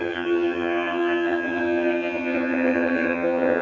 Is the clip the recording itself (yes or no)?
no